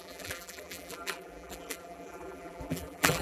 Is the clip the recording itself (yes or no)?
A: no